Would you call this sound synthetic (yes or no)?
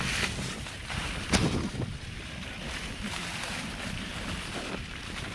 no